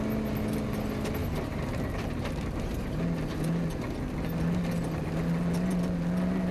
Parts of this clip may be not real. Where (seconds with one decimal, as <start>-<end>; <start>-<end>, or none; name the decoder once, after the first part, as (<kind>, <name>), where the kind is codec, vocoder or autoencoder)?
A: 1.2-3.0 (vocoder, BigVGAN v2)